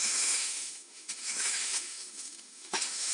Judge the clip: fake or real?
fake